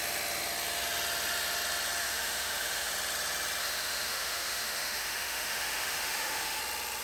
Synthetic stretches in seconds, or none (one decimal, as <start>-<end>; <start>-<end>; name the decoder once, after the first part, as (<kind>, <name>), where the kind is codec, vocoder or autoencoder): 2.0-2.9 (autoencoder, DAC-VAE); 3.6-6.6